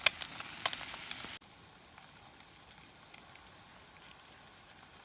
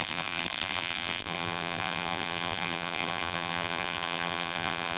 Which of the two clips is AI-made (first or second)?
second